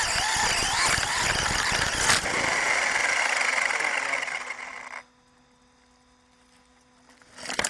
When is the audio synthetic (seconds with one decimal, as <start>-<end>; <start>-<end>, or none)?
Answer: none